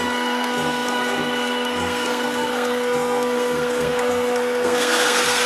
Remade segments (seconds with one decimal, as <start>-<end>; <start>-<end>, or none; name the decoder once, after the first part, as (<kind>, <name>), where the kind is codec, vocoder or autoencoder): 0.0-5.5 (codec, SNAC)